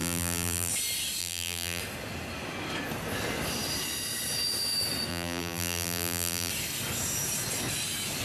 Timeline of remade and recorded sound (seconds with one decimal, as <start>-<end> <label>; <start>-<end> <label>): 0.0-0.7 remade; 0.7-1.2 recorded; 1.2-1.8 remade; 1.8-5.1 recorded; 5.1-6.5 remade; 6.5-8.2 recorded